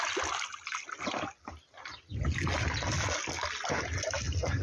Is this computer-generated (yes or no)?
no